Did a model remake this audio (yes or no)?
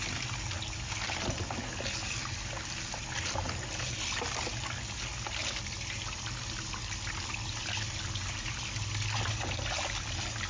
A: no